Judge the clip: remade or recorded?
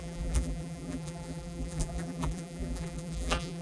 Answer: remade